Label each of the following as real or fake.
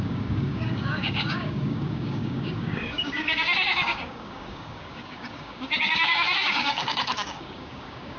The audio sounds fake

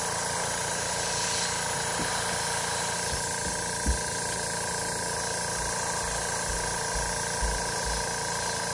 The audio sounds real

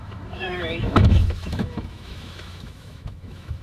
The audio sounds fake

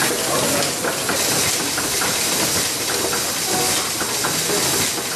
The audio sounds real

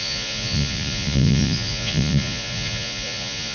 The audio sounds fake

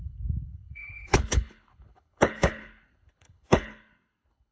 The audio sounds fake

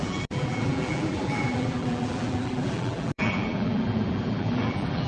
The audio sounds fake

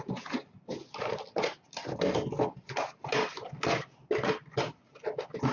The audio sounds real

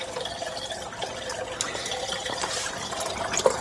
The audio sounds real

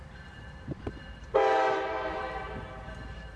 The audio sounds fake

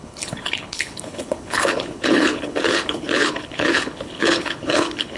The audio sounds fake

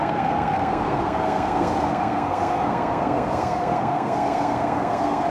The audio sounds fake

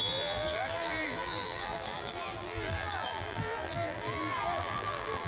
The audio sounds fake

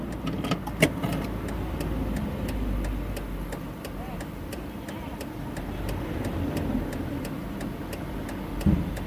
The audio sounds fake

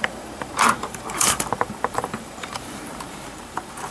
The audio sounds fake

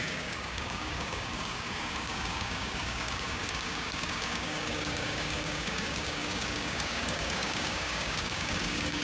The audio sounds fake